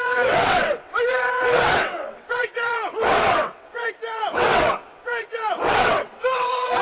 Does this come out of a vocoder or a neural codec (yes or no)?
yes